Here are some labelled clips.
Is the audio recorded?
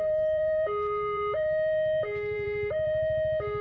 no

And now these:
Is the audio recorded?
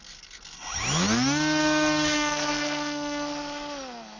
yes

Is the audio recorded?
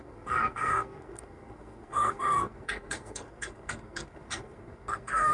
no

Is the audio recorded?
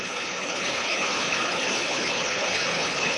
no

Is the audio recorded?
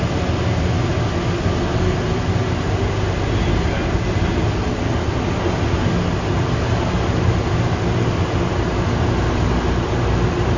yes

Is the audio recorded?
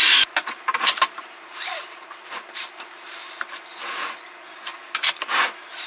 no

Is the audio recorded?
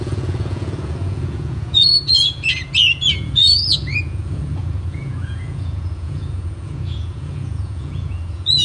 no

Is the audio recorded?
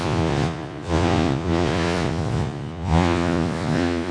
no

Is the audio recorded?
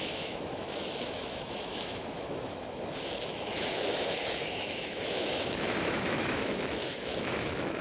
no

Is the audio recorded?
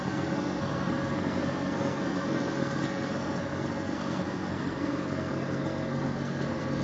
no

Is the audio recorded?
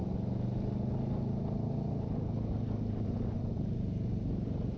yes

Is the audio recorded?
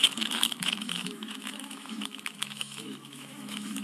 no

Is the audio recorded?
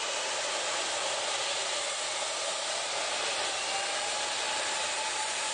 yes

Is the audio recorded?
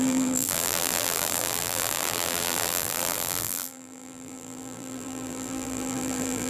no